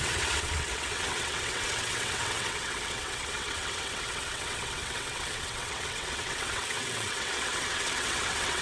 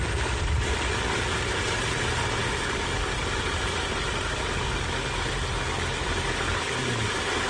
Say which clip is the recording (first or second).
second